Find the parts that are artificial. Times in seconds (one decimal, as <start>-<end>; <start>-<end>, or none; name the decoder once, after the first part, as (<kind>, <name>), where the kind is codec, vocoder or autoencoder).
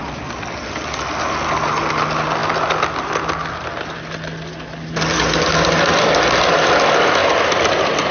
none